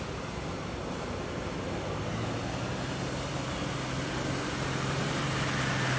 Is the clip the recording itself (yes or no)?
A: yes